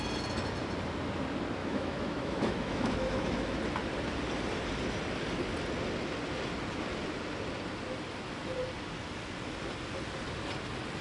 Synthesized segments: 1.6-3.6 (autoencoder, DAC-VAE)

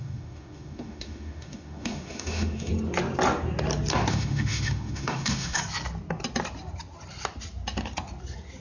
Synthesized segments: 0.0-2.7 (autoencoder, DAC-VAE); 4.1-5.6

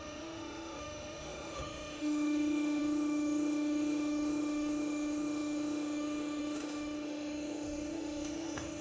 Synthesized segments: 0.0-8.8 (autoencoder, DAC-VAE)